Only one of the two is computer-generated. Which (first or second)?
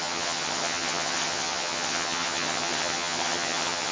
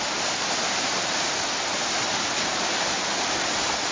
first